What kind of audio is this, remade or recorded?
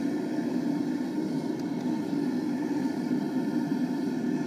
recorded